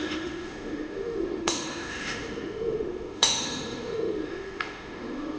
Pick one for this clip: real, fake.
fake